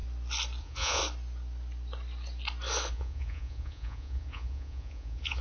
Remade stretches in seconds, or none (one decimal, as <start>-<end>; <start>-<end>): 0.6-1.0; 2.9-5.4